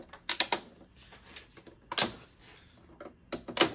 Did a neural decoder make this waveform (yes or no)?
no